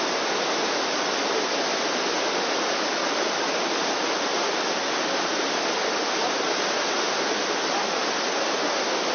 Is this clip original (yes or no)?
yes